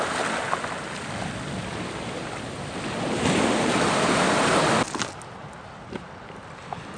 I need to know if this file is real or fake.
real